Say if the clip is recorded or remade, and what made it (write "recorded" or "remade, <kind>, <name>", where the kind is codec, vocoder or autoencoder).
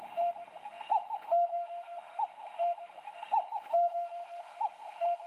remade, autoencoder, DAC-VAE